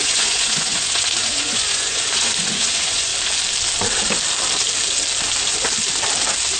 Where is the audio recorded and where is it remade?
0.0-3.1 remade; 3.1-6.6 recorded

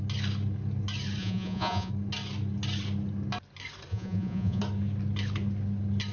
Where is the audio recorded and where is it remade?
0.0-1.2 recorded; 1.2-1.9 remade; 1.9-3.9 recorded; 3.9-4.6 remade; 4.6-6.1 recorded

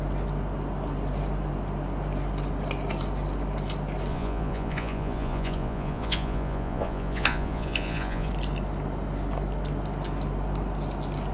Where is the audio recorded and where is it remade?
0.0-4.1 recorded; 4.1-8.3 remade; 8.3-11.3 recorded